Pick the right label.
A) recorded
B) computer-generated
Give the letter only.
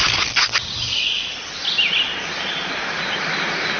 A